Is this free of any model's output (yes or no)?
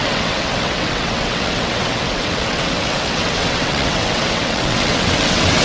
no